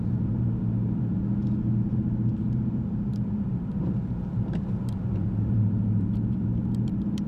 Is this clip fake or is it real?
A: fake